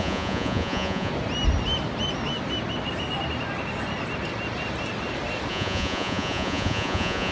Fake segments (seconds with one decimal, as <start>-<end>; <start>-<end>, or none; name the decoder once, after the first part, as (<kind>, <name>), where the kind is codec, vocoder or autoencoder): 0.0-1.1 (vocoder, Vocos); 5.5-7.3